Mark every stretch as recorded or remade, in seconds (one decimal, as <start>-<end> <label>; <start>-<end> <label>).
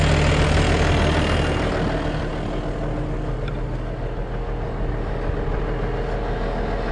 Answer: 0.0-6.9 recorded